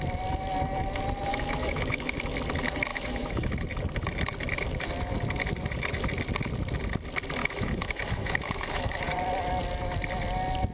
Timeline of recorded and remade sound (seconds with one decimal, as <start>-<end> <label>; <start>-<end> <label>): 0.0-1.3 recorded; 1.3-2.3 remade; 2.3-2.9 recorded; 2.9-3.5 remade; 3.5-7.4 recorded; 7.4-9.0 remade; 9.0-10.7 recorded